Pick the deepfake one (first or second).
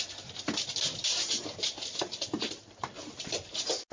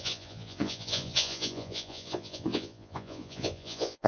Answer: second